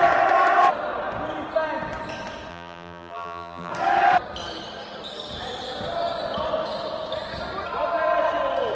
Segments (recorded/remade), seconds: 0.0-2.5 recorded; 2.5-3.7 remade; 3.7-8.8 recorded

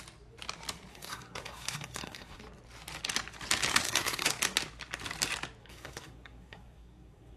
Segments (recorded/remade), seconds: 0.0-0.9 recorded; 0.9-2.4 remade; 2.4-3.7 recorded; 3.7-4.4 remade; 4.4-5.6 recorded; 5.6-7.4 remade

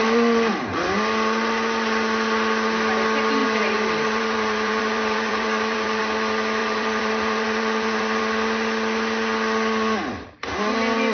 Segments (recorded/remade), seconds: 0.0-3.4 recorded; 3.4-6.0 remade; 6.0-6.6 recorded; 6.6-8.2 remade; 8.2-11.1 recorded

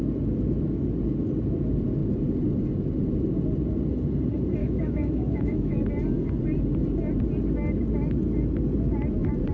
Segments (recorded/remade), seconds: 0.0-4.6 recorded; 4.6-5.9 remade; 5.9-9.5 recorded

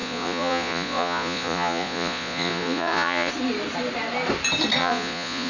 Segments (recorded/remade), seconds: 0.0-3.3 remade; 3.3-4.8 recorded; 4.8-5.5 remade